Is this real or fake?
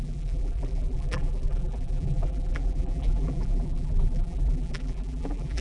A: fake